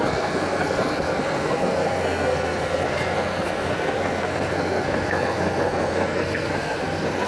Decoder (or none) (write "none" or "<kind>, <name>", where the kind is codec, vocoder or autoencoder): codec, SNAC